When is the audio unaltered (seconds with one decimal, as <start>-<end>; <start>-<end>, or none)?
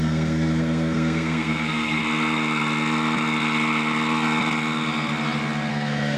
2.0-5.7